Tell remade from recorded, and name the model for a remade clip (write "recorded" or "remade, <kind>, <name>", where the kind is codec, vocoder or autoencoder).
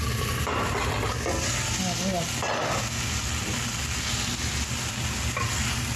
recorded